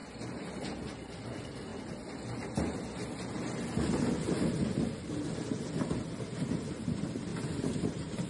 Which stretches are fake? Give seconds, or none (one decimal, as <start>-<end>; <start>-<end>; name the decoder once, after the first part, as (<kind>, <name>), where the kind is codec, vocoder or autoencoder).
1.2-1.7 (vocoder, BigVGAN v2); 6.7-7.3; 7.9-8.3